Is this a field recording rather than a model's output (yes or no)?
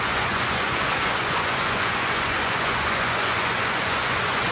no